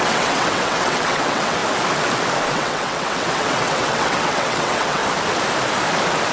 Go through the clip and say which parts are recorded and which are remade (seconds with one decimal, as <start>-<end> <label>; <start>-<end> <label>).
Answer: 0.0-1.6 remade; 1.6-2.5 recorded; 2.5-5.0 remade; 5.0-6.3 recorded